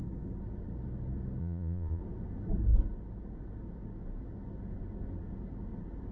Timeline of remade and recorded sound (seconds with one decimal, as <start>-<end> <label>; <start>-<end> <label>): 0.0-1.4 recorded; 1.4-2.0 remade; 2.0-6.1 recorded